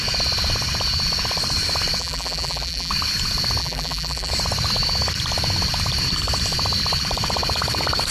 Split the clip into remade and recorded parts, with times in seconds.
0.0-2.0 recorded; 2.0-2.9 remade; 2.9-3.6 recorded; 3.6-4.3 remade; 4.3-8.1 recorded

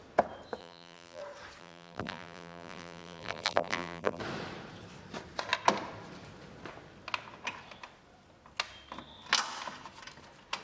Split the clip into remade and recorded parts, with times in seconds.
0.0-0.6 recorded; 0.6-1.2 remade; 1.2-1.6 recorded; 1.6-4.2 remade; 4.2-10.6 recorded

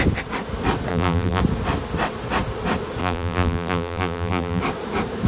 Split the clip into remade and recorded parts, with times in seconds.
0.0-0.9 recorded; 0.9-1.4 remade; 1.4-3.0 recorded; 3.0-4.6 remade; 4.6-5.3 recorded

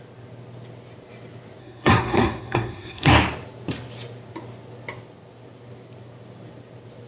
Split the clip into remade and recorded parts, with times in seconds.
0.0-1.6 recorded; 1.6-3.1 remade; 3.1-7.1 recorded